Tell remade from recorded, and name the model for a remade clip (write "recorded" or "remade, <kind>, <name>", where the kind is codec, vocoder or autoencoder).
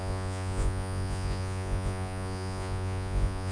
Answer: remade, vocoder, Vocos